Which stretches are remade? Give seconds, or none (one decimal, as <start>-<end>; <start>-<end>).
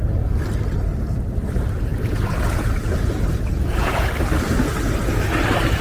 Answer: 1.9-4.1